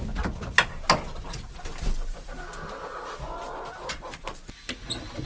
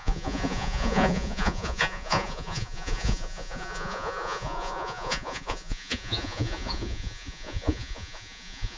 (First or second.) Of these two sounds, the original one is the first